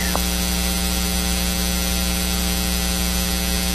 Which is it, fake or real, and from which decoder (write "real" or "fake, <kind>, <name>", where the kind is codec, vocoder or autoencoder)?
real